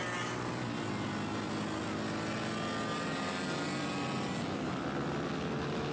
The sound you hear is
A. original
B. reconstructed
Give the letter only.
A